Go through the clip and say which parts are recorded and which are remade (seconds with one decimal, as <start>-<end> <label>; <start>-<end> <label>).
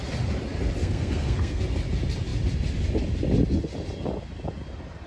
0.0-0.8 recorded; 0.8-1.6 remade; 1.6-5.1 recorded